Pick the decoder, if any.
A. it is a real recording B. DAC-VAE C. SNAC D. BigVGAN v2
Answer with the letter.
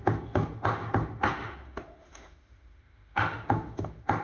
B